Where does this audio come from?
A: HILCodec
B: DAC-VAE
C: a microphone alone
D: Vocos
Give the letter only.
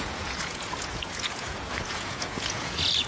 D